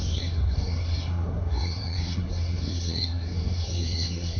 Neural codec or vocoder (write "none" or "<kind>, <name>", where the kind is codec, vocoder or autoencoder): codec, SNAC